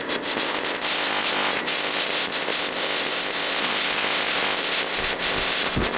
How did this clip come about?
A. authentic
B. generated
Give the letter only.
B